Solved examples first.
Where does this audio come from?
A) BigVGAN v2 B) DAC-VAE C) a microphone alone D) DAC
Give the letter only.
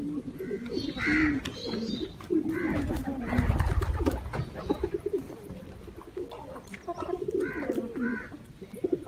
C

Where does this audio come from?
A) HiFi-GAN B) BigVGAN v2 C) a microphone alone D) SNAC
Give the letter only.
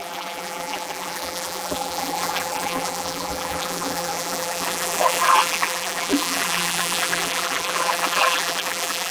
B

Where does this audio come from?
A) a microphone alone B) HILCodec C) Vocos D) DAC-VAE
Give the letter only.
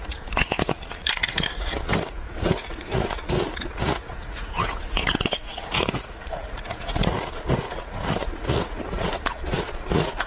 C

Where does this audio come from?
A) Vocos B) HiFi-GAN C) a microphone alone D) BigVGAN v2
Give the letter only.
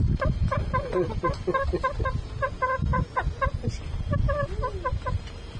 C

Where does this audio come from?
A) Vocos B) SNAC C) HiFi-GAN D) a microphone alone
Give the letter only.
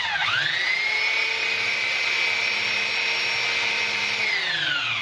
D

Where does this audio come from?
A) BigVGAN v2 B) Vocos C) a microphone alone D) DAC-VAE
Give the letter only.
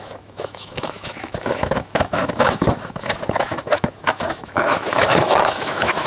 D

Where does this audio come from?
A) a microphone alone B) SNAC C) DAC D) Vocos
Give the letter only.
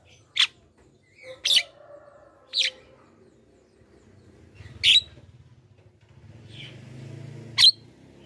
A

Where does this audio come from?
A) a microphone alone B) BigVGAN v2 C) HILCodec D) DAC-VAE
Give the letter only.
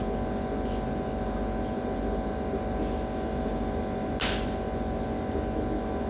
A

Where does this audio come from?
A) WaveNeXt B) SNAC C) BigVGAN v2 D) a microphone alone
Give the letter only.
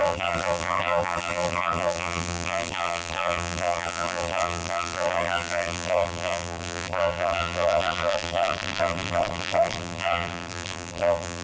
C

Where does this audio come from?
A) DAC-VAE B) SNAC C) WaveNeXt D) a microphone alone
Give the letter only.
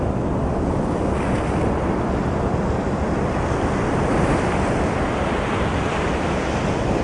D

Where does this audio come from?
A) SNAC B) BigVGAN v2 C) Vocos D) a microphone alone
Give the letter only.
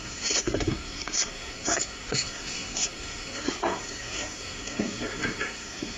A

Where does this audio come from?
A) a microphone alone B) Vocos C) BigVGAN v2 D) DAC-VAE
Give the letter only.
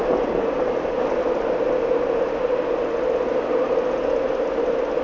A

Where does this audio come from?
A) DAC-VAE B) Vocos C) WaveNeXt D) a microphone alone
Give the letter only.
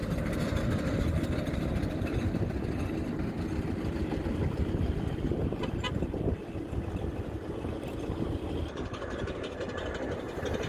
D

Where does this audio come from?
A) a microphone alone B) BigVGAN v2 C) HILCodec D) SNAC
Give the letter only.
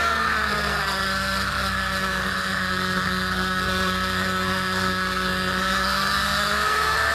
D